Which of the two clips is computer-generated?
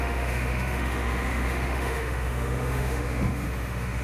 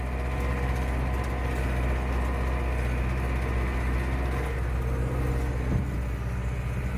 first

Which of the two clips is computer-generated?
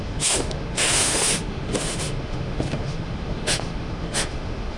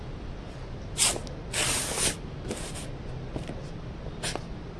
first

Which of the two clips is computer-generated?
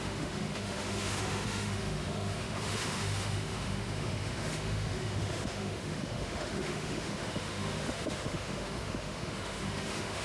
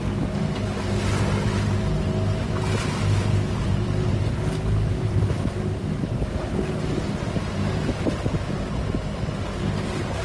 first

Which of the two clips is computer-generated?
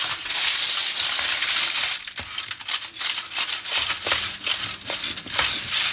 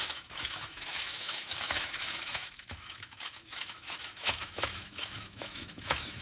second